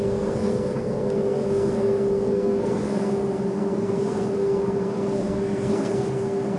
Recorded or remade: remade